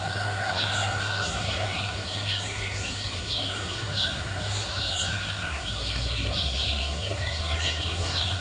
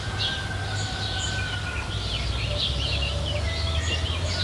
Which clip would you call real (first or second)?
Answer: second